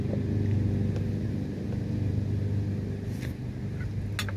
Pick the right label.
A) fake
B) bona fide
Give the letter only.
B